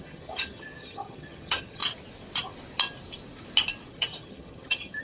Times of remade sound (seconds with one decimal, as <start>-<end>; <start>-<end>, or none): 0.0-1.8; 3.9-5.0